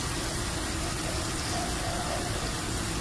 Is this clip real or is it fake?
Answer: real